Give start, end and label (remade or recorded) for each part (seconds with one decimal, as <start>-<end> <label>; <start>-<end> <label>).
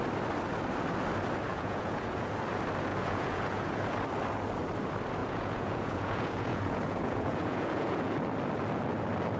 0.0-1.5 recorded; 1.5-2.3 remade; 2.3-2.9 recorded; 2.9-3.8 remade; 3.8-5.2 recorded; 5.2-8.1 remade; 8.1-9.4 recorded